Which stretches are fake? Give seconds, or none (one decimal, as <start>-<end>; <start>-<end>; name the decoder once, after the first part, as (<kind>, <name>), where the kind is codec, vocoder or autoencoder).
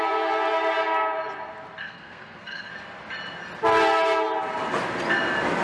1.8-2.7 (codec, SNAC)